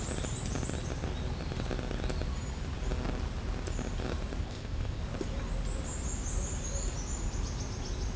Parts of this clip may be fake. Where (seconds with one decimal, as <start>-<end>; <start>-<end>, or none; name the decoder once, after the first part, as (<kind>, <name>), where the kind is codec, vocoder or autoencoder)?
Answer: 4.4-5.0 (codec, ZipCodec)

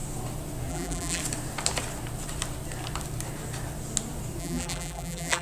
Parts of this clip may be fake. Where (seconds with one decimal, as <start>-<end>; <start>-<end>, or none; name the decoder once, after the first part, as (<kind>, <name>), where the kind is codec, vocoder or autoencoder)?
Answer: 0.7-1.2 (vocoder, BigVGAN v2); 4.4-5.4